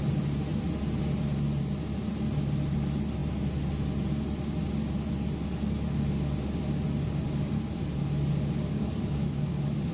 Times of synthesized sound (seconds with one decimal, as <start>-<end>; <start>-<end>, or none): 8.7-9.9